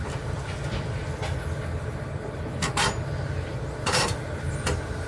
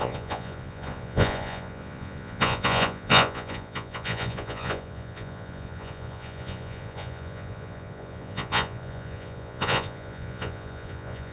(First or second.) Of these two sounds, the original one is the first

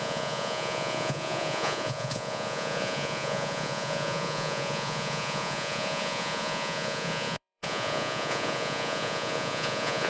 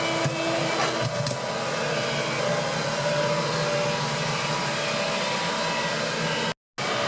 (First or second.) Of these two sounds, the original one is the second